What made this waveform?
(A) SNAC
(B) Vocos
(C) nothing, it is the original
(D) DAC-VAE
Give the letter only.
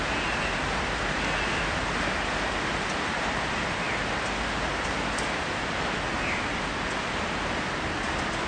C